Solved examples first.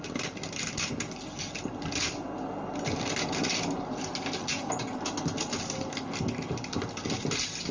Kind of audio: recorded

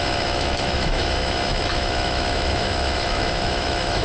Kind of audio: remade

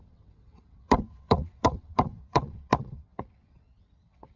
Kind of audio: remade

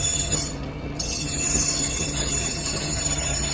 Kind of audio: remade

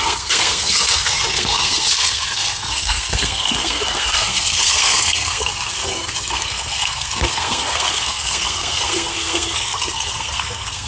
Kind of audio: remade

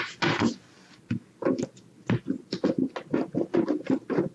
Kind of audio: recorded